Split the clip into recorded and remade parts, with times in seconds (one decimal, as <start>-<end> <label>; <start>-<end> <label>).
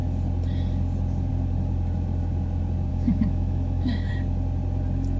0.0-2.9 recorded; 2.9-4.1 remade; 4.1-5.2 recorded